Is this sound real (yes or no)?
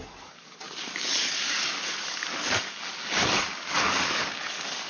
no